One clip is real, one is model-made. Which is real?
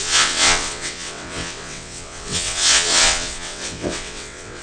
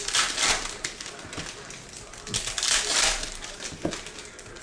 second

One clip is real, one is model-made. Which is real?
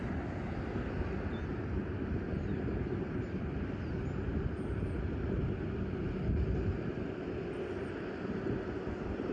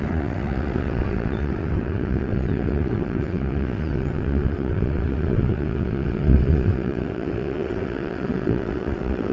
first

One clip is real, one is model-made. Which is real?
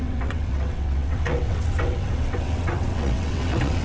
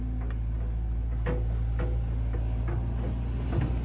second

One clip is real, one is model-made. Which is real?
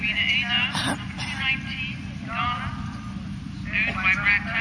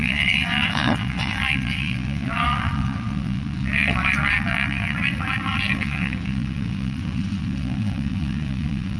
first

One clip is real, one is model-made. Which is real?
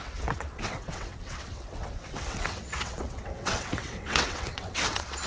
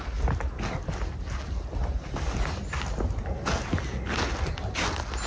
second